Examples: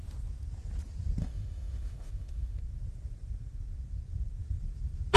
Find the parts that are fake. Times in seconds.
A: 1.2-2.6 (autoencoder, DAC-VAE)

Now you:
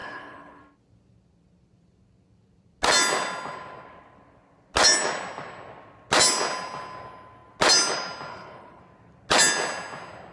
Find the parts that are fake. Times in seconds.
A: 0.0-0.6 (codec, HILCodec); 8.3-8.8